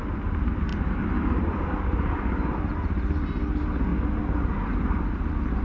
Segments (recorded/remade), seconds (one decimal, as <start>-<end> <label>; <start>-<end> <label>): 0.0-5.6 recorded